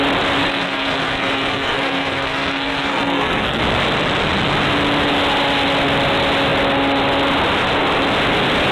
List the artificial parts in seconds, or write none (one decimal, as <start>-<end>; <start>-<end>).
0.5-3.6